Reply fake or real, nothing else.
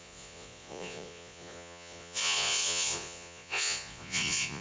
fake